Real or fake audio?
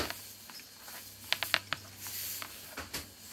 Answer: real